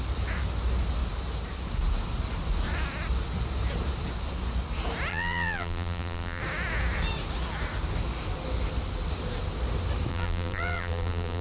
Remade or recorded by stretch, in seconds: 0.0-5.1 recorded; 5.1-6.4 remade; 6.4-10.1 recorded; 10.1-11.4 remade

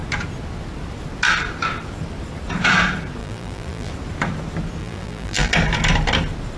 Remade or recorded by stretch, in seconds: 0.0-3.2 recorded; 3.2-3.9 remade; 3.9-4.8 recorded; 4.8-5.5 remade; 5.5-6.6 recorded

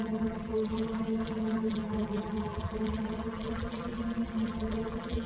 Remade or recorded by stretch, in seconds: 0.0-5.3 remade